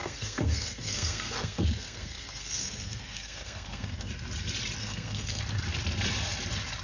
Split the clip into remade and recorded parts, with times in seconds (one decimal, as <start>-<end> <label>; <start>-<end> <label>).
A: 0.0-4.1 remade; 4.1-4.8 recorded; 4.8-5.4 remade; 5.4-6.8 recorded